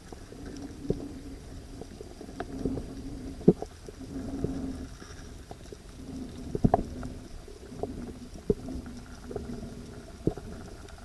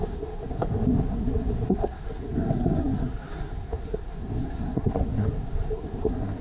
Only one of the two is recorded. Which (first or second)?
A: first